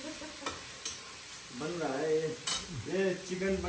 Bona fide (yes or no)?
yes